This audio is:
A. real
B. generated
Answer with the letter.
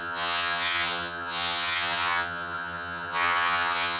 B